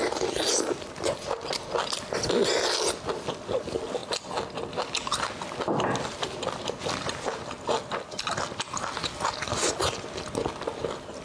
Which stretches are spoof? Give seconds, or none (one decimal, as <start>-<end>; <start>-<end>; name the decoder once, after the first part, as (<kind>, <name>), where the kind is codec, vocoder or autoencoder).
none